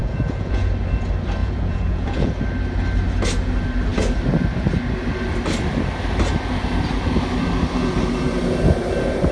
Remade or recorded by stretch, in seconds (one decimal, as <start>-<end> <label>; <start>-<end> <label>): 0.0-0.7 remade; 0.7-1.4 recorded; 1.4-2.3 remade; 2.3-9.3 recorded